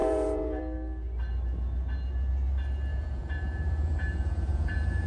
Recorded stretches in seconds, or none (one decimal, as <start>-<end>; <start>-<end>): 0.6-2.9